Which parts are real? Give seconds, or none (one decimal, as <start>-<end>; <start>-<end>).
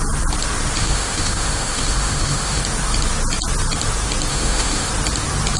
0.0-0.8; 2.6-4.3; 4.9-5.6